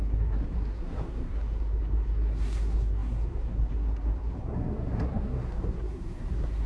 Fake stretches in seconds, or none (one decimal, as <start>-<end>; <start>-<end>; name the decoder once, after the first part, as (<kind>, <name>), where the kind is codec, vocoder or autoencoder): 0.0-6.7 (codec, SNAC)